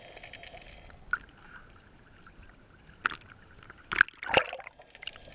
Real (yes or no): yes